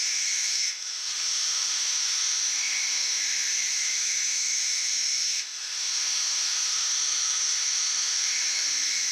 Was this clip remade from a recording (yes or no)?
yes